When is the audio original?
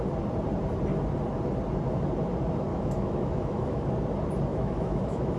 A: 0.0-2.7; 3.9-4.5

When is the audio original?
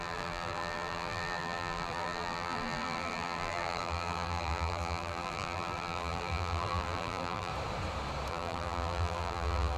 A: 7.5-8.3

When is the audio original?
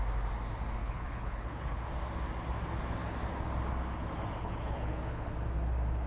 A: 0.0-0.8; 1.8-4.4; 5.3-6.1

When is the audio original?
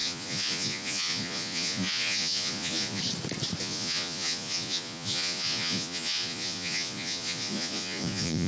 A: 3.0-3.6